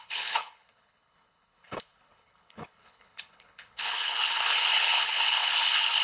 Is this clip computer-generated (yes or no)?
yes